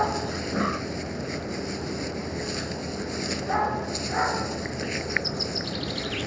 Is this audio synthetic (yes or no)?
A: no